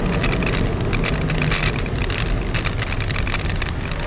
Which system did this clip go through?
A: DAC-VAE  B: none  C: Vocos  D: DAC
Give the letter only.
B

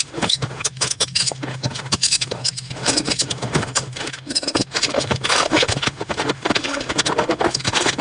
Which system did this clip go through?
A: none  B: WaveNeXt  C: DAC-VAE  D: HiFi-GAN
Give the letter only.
C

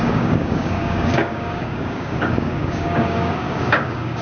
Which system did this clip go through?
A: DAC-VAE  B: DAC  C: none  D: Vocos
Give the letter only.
B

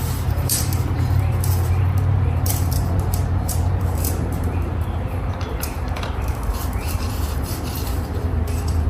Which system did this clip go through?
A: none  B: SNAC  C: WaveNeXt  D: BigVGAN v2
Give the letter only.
D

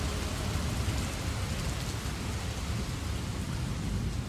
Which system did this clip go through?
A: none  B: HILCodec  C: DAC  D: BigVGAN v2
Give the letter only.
A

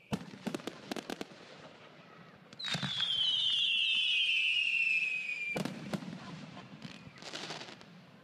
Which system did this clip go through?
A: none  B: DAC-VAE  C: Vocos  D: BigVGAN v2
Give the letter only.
D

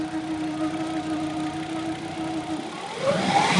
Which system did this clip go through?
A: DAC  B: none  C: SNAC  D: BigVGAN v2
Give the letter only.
B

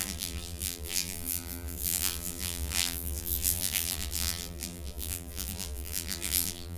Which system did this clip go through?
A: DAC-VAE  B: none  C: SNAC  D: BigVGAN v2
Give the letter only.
D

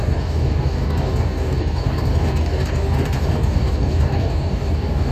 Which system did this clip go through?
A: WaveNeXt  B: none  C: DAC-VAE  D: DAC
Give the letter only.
D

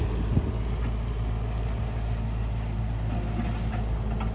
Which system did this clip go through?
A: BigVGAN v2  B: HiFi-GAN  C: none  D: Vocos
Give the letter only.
C